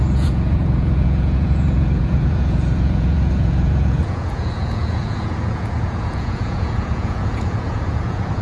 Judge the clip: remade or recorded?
remade